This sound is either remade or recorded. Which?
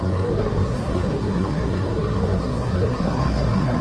remade